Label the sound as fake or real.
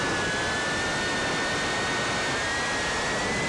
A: real